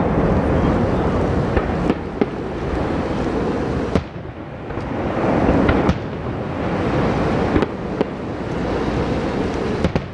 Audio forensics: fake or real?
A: real